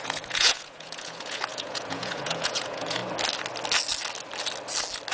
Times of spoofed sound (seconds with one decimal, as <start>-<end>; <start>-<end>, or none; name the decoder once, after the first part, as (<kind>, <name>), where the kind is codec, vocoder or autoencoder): 0.0-3.0 (vocoder, Vocos)